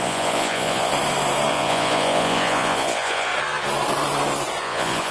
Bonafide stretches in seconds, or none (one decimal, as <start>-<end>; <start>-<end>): 0.9-1.5; 3.3-4.6